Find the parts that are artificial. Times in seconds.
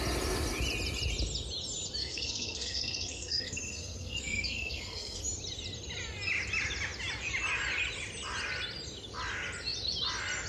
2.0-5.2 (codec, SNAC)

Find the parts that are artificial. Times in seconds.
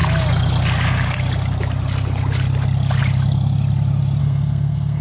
4.2-5.0 (codec, SNAC)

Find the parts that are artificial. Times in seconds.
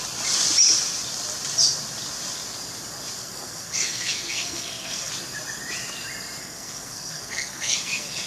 3.2-5.1 (codec, SNAC); 6.4-8.3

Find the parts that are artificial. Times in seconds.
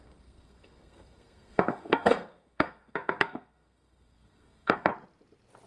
0.0-4.9 (codec, SNAC)